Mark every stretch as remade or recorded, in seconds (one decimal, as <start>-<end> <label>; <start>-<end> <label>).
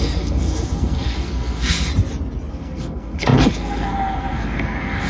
0.0-1.9 remade; 1.9-2.5 recorded; 2.5-5.1 remade